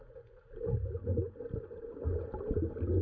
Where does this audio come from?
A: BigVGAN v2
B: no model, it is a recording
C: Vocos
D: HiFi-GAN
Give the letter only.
B